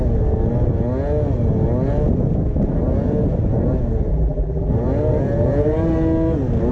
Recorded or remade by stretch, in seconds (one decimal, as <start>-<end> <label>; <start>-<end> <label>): 0.0-4.1 recorded; 4.1-4.7 remade; 4.7-6.7 recorded